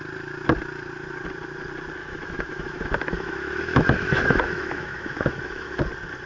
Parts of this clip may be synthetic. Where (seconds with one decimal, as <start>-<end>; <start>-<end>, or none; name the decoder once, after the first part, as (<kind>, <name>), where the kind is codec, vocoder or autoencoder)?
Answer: 2.0-5.8 (autoencoder, DAC-VAE)